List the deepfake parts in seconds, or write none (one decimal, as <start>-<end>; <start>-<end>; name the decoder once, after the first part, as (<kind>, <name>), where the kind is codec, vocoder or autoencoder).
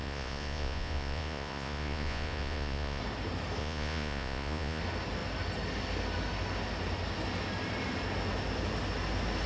0.0-3.0 (vocoder, Vocos); 3.6-4.8